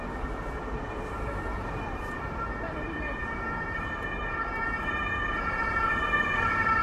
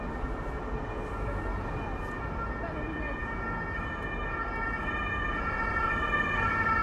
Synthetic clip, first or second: first